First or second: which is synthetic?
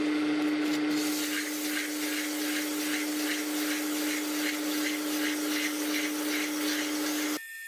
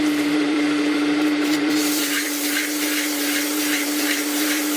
second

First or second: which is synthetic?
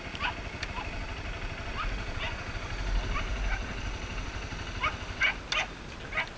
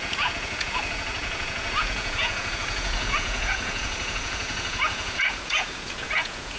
second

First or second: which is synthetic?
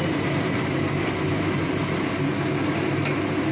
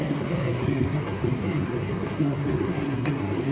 second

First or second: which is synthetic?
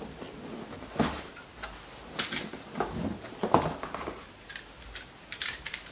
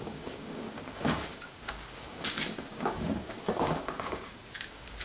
second